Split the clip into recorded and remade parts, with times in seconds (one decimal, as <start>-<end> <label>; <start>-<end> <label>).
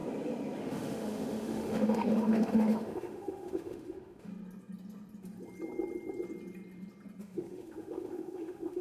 0.0-0.6 recorded; 0.6-4.3 remade; 4.3-7.2 recorded; 7.2-8.8 remade